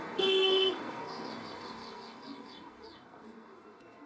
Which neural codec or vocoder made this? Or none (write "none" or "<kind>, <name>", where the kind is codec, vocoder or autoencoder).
codec, SNAC